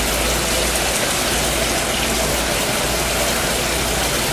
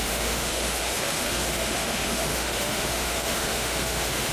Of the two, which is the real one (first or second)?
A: first